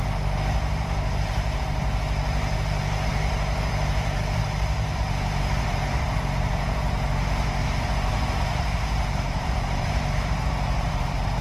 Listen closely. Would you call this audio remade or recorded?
remade